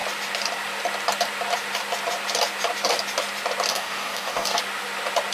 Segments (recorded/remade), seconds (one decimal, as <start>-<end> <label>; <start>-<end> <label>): 0.0-3.7 recorded; 3.7-4.6 remade; 4.6-5.3 recorded